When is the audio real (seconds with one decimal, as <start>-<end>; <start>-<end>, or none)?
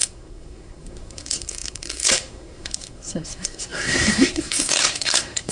none